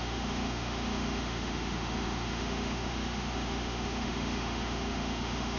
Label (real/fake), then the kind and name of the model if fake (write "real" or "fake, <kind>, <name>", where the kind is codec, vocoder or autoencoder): fake, autoencoder, DAC-VAE